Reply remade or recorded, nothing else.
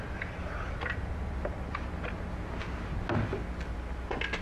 recorded